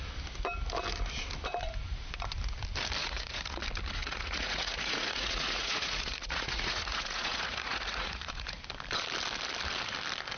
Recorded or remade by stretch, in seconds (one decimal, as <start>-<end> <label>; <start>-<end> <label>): 0.0-3.0 recorded; 3.0-3.6 remade; 3.6-4.0 recorded; 4.0-8.6 remade; 8.6-10.4 recorded